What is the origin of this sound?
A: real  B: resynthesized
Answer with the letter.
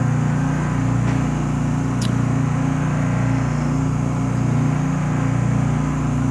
A